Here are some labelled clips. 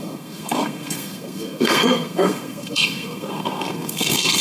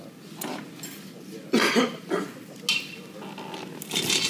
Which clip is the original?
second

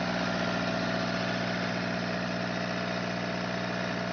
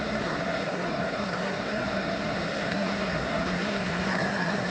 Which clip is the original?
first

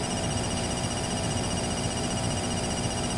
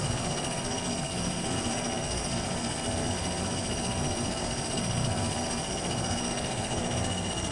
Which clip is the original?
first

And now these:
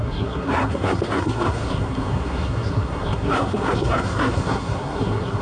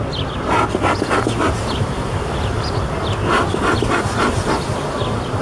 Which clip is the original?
second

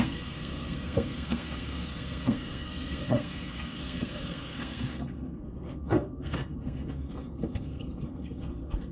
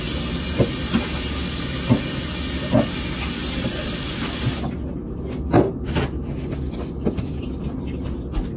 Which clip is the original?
second